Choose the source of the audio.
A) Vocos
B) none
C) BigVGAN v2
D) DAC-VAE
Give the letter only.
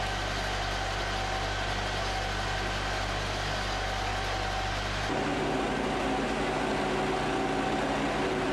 B